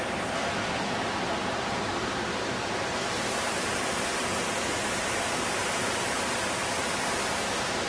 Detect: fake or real real